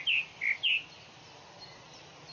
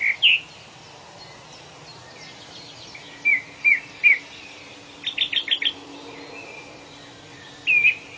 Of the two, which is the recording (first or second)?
second